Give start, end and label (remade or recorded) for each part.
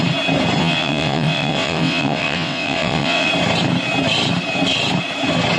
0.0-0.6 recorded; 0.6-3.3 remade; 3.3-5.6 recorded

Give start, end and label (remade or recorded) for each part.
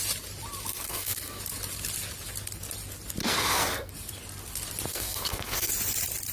0.0-0.7 recorded; 0.7-1.4 remade; 1.4-3.2 recorded; 3.2-3.9 remade; 3.9-4.9 recorded; 4.9-5.7 remade; 5.7-6.3 recorded